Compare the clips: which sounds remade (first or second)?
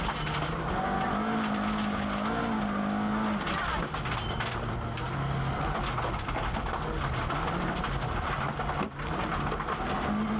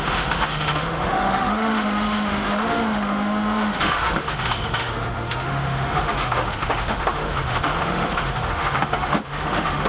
second